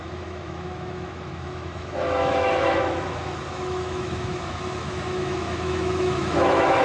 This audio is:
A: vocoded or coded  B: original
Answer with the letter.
A